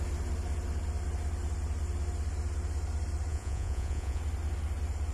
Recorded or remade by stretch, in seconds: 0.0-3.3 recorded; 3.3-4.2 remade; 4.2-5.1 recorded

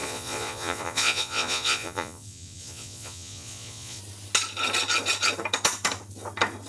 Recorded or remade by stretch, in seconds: 0.0-4.0 remade; 4.0-6.7 recorded

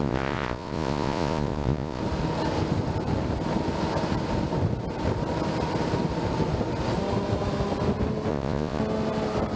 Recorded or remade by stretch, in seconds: 0.0-2.0 remade; 2.0-8.3 recorded; 8.3-8.8 remade; 8.8-9.6 recorded

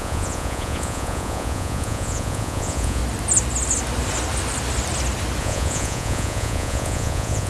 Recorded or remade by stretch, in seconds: 0.0-3.0 remade; 3.0-5.4 recorded; 5.4-7.5 remade

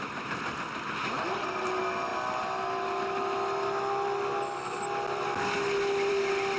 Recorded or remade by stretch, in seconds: 0.0-6.6 recorded

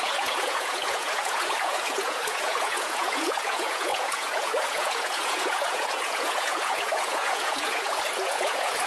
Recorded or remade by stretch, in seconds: 0.0-8.9 remade

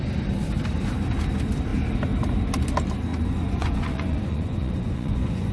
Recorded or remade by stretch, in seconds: 0.0-3.1 recorded; 3.1-5.5 remade